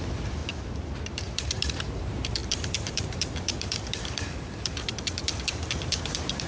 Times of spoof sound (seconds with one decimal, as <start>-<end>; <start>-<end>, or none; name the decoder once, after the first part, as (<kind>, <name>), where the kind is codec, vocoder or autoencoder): 0.0-0.4 (vocoder, BigVGAN v2); 1.1-6.5